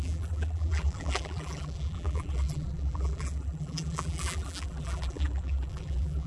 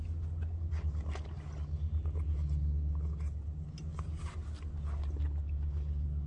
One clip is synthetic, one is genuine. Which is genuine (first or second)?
second